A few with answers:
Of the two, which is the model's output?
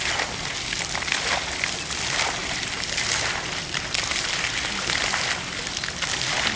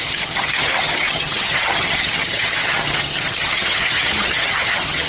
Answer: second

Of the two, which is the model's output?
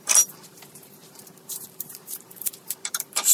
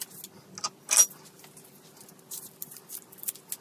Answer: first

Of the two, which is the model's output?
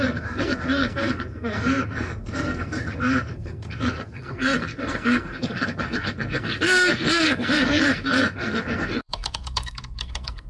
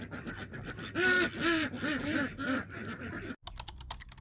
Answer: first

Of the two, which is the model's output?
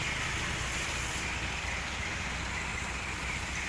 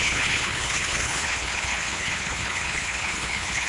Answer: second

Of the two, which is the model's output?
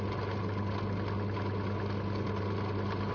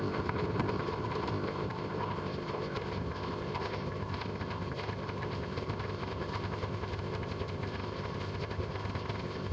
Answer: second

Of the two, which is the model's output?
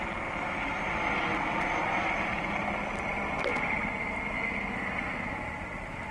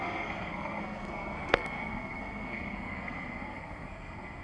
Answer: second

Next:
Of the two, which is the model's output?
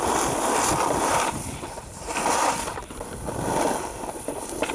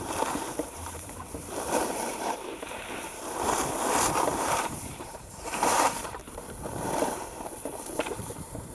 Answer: second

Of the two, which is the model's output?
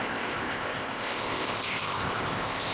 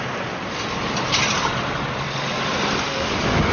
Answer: first